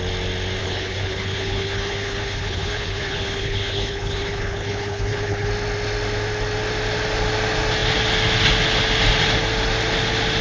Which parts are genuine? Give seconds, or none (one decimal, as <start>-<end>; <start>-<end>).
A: 0.0-0.6; 5.5-10.4